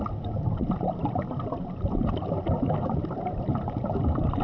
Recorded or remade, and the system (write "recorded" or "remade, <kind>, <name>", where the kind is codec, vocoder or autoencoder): recorded